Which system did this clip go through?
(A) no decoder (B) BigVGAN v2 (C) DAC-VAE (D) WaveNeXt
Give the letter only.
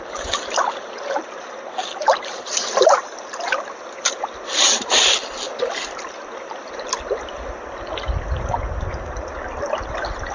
A